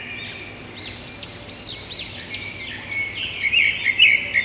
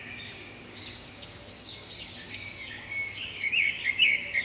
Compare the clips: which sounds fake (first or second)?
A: second